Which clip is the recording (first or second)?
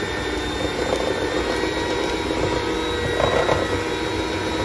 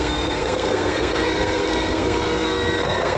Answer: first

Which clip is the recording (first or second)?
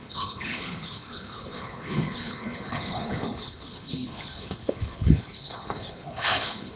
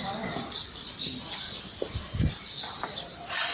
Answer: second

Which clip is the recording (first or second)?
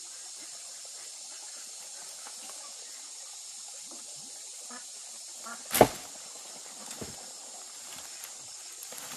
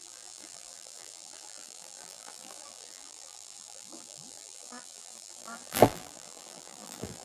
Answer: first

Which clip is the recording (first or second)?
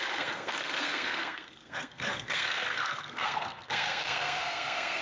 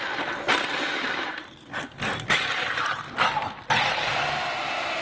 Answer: second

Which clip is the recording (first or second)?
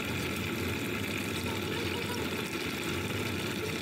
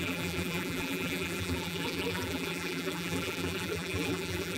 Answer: first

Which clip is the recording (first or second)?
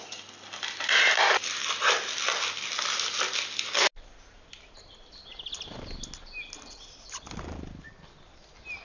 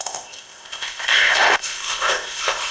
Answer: first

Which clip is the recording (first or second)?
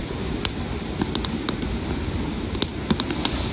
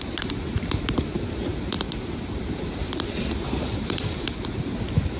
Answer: first